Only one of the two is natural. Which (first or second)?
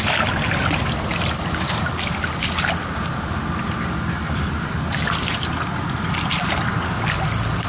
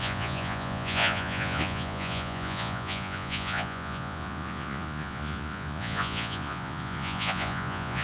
first